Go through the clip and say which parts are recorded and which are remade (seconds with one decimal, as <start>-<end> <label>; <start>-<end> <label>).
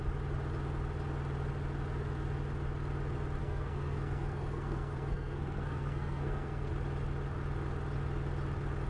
0.0-3.4 recorded; 3.4-6.7 remade; 6.7-8.9 recorded